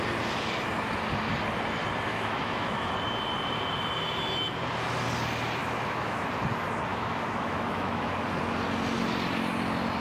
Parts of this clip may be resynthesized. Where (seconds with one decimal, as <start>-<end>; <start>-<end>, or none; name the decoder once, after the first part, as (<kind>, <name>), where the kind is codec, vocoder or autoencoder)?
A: 2.1-2.9 (autoencoder, DAC-VAE); 5.6-6.3; 6.9-8.1